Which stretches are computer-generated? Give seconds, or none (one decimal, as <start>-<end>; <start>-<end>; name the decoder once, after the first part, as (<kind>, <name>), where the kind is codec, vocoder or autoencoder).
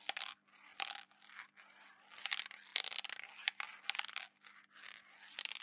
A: 0.7-1.4 (vocoder, BigVGAN v2)